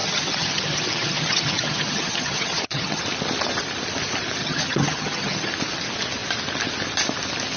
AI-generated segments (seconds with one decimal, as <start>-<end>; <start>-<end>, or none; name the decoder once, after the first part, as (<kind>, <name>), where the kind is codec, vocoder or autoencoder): 0.0-3.0 (vocoder, HiFi-GAN); 4.4-5.5